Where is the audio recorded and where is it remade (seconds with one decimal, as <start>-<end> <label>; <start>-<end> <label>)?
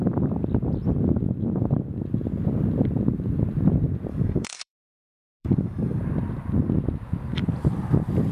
0.0-4.1 recorded; 4.1-6.0 remade; 6.0-8.3 recorded